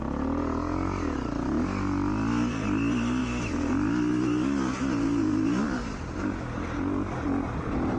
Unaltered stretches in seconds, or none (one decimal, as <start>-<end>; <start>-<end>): 0.0-3.2; 3.7-8.0